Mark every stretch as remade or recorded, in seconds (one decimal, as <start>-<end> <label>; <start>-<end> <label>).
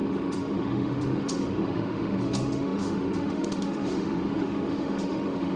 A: 0.0-5.6 remade